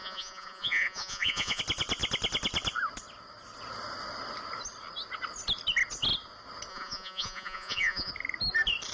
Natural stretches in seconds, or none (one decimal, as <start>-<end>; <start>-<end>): 1.6-6.7; 8.1-8.9